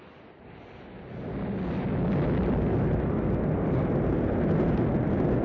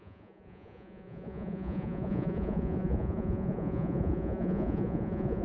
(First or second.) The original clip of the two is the first